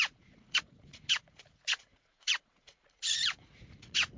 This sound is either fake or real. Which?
fake